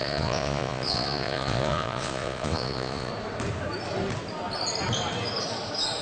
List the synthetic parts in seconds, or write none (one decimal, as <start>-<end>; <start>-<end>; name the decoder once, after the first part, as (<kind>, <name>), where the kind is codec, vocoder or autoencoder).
0.0-3.1 (vocoder, Vocos)